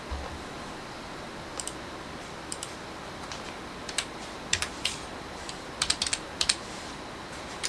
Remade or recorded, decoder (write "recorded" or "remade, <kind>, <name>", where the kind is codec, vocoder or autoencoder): remade, vocoder, BigVGAN v2